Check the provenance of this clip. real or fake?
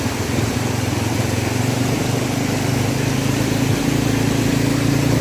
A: real